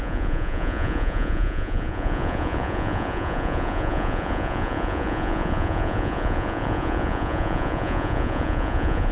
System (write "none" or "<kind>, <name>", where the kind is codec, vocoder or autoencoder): vocoder, Vocos